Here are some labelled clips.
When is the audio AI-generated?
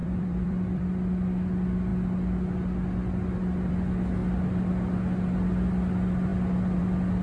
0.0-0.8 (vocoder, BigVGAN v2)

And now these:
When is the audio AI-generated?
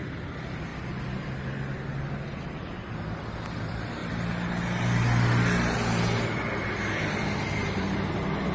0.0-0.7 (vocoder, BigVGAN v2); 3.6-4.0; 6.9-8.5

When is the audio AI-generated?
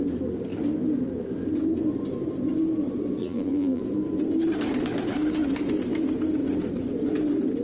3.2-3.8 (vocoder, BigVGAN v2)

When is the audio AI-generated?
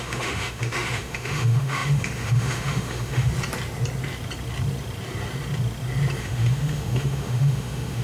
0.0-3.3 (autoencoder, DAC-VAE); 6.2-8.0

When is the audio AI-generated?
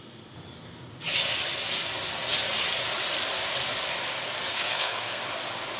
4.5-5.2 (codec, SNAC)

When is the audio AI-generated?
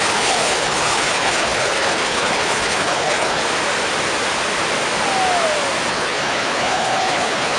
0.0-3.4 (codec, HILCodec); 5.9-7.6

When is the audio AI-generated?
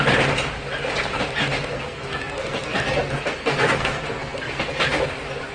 1.7-5.0 (codec, SNAC)